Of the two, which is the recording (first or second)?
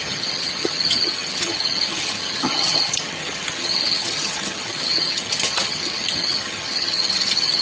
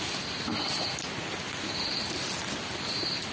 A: second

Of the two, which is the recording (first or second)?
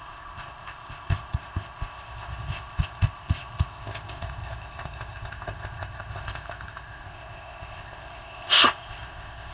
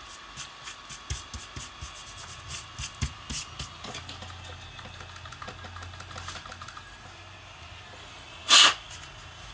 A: second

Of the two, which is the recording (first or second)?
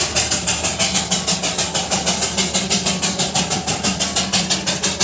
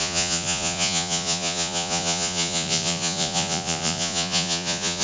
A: first